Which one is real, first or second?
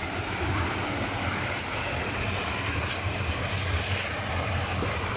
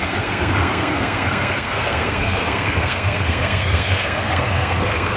first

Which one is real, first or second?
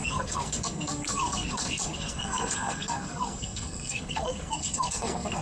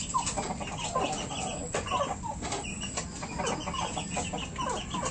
second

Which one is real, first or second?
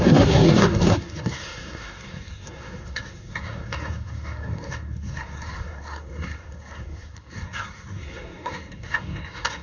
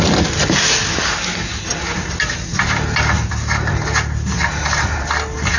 second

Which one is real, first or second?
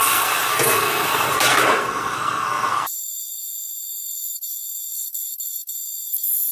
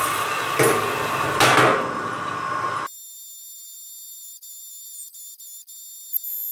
second